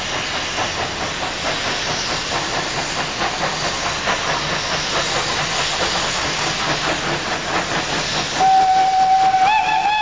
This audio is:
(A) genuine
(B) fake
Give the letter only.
A